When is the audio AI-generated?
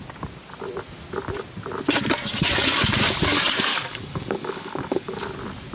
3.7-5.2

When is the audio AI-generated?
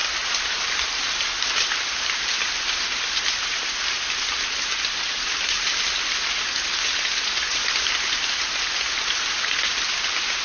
none